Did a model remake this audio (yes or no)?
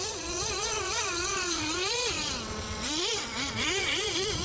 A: yes